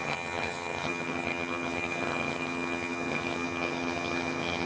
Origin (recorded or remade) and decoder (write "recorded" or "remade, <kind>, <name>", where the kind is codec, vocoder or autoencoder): remade, vocoder, HiFi-GAN